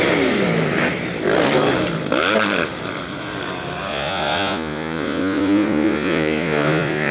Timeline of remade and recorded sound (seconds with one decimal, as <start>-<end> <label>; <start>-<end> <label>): 0.0-3.9 recorded; 3.9-7.1 remade